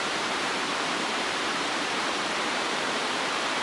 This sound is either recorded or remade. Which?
remade